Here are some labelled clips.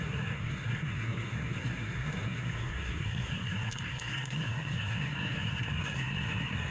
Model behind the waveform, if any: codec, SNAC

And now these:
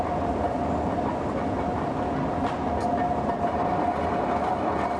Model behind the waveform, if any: none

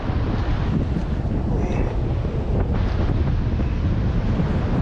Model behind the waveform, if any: none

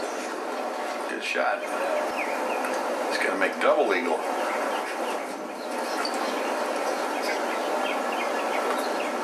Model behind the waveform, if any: none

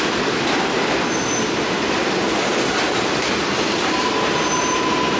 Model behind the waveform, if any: none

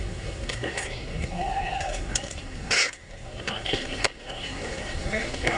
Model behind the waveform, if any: codec, SNAC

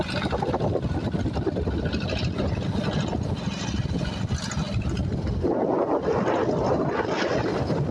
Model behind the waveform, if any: none